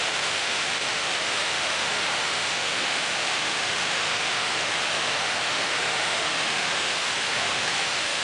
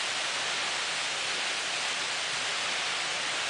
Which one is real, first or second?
second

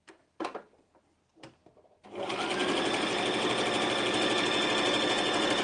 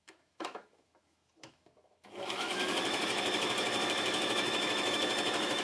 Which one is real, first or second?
first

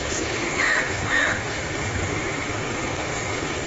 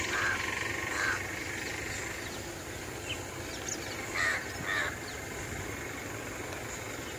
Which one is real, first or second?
second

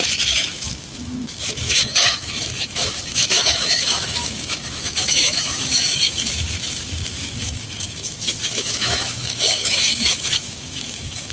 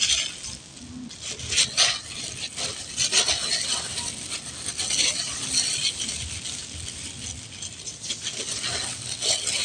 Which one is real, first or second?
second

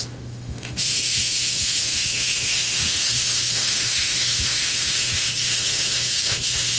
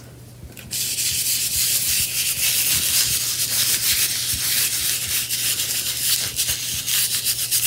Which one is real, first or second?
second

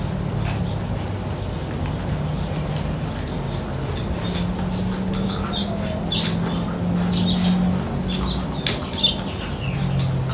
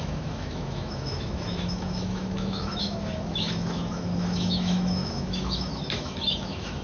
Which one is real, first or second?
first